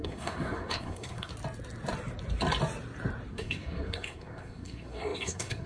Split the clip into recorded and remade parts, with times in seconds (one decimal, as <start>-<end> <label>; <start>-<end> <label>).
0.0-1.3 remade; 1.3-3.3 recorded; 3.3-5.7 remade